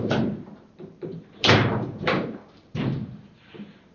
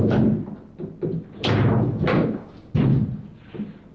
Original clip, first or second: second